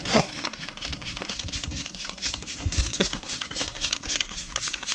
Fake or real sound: fake